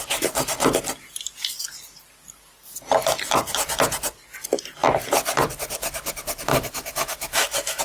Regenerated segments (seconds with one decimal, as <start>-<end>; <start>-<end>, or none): 6.5-7.8